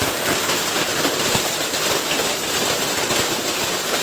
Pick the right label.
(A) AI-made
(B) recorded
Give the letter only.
B